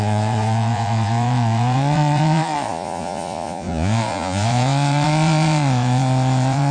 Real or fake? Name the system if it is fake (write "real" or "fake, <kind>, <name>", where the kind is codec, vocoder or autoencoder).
fake, vocoder, Vocos